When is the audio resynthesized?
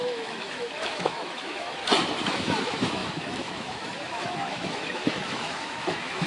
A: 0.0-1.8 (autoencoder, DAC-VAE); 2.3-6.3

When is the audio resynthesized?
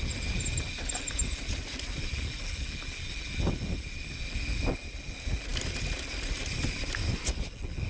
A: none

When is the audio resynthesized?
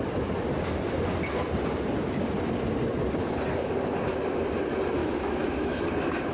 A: 5.0-5.8 (autoencoder, DAC-VAE)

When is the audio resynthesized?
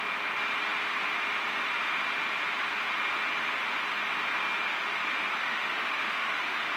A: 5.4-6.8 (autoencoder, DAC-VAE)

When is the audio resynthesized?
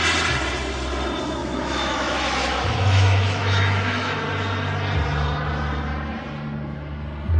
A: 1.4-4.2 (autoencoder, DAC-VAE)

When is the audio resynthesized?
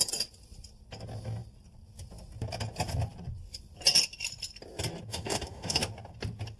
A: 5.1-5.8 (autoencoder, DAC-VAE)